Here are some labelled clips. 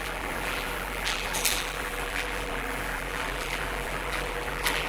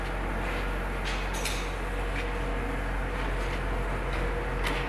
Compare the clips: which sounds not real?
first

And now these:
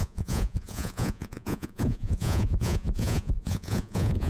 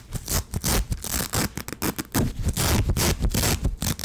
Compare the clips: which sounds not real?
first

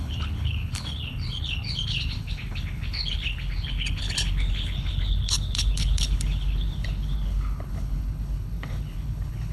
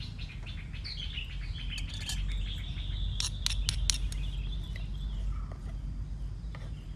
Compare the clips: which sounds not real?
first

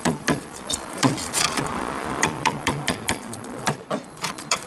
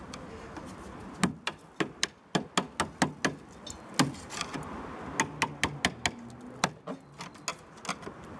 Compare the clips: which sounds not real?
first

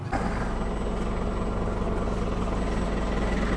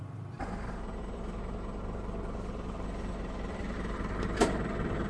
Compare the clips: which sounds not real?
second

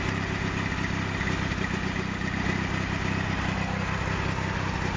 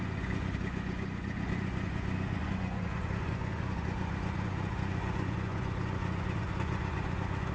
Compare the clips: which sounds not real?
second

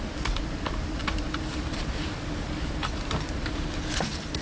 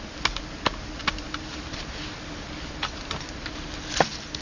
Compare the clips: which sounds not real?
first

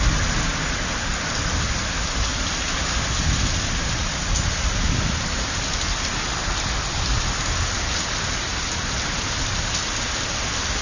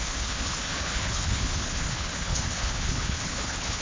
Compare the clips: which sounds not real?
second